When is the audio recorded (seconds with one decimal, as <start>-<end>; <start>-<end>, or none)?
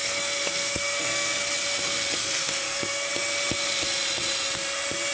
1.4-2.2; 3.1-5.1